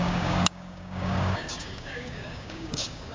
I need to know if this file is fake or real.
fake